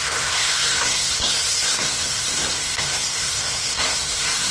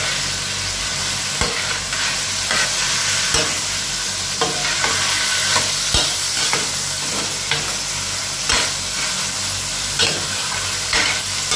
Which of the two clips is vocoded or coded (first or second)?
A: first